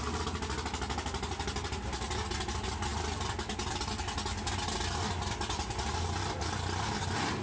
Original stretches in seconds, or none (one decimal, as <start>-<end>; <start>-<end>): 0.0-7.4